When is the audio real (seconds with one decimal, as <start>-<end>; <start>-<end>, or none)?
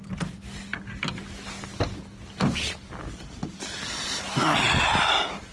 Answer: 0.0-5.5